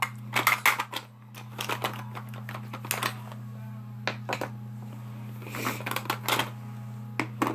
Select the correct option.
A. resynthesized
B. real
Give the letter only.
B